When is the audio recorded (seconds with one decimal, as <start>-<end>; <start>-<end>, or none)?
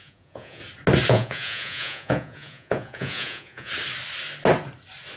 0.6-1.1; 3.7-5.2